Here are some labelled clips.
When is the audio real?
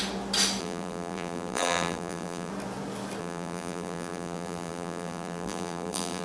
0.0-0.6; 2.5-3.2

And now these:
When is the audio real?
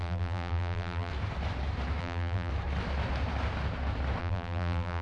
1.1-2.0; 2.5-4.2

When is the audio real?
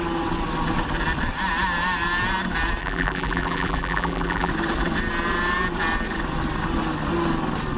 0.0-2.8; 4.5-7.8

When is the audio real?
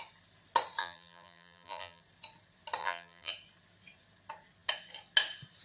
0.0-0.8; 2.0-2.8; 3.3-5.6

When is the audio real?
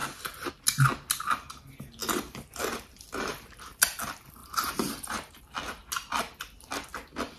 0.0-2.0; 3.8-4.4; 5.4-7.4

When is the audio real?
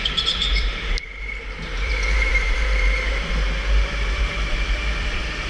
none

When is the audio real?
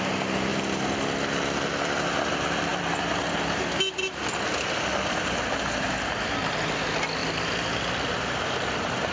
0.0-0.5; 1.1-2.7; 3.2-4.5; 6.5-7.2; 7.8-9.1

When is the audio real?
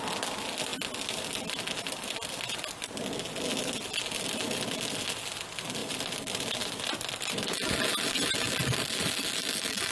0.0-5.8; 7.1-9.9